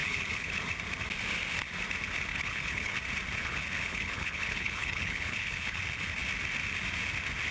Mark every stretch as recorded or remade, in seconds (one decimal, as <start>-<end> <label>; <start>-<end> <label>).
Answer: 0.0-0.7 remade; 0.7-2.3 recorded; 2.3-3.0 remade; 3.0-3.4 recorded; 3.4-5.8 remade; 5.8-7.5 recorded